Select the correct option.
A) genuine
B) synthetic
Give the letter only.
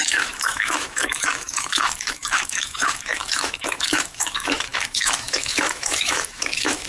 B